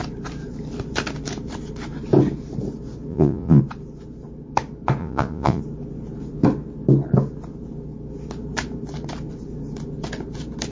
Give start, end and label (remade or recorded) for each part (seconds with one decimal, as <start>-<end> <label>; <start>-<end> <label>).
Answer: 0.0-3.1 recorded; 3.1-3.6 remade; 3.6-5.0 recorded; 5.0-5.6 remade; 5.6-10.7 recorded